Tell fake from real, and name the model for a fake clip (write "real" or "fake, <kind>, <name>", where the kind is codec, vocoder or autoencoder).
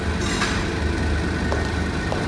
real